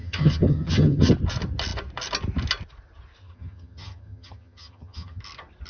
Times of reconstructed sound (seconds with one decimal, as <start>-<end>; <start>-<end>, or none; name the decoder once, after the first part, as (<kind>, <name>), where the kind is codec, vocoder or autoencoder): 0.0-1.1 (vocoder, HiFi-GAN); 3.2-5.2